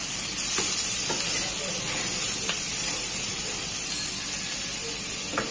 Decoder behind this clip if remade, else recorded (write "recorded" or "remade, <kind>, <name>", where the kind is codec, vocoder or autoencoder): recorded